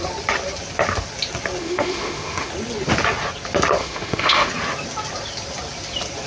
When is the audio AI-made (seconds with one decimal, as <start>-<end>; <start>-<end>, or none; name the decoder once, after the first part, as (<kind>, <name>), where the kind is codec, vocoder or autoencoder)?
1.6-2.5 (autoencoder, DAC-VAE); 3.8-4.5